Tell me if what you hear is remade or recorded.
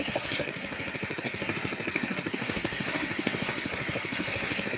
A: remade